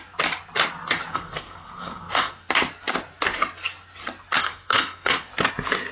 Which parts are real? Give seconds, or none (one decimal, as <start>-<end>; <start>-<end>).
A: 0.0-1.1; 2.5-4.4; 5.3-5.9